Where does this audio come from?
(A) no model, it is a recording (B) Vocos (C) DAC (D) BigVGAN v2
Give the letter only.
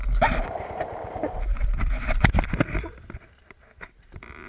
D